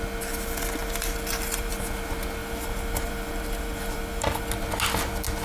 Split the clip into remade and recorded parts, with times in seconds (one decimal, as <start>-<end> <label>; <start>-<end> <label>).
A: 0.0-0.8 recorded; 0.8-1.7 remade; 1.7-2.4 recorded; 2.4-4.5 remade; 4.5-5.4 recorded